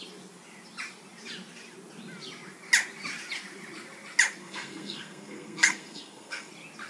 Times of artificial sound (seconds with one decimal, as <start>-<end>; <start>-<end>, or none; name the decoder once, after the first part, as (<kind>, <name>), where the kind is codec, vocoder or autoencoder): 4.4-6.5 (codec, SNAC)